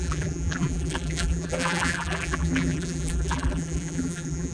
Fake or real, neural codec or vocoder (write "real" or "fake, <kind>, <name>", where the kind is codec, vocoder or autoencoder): fake, vocoder, BigVGAN v2